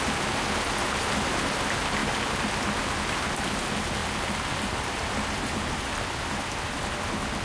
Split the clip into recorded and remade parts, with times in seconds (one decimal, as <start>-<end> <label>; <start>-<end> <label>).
0.0-4.0 recorded; 4.0-6.1 remade; 6.1-7.4 recorded